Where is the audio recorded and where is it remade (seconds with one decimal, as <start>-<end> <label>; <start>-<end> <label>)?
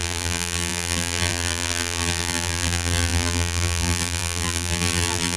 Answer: 0.0-5.4 remade